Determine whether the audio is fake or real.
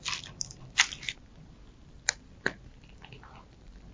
real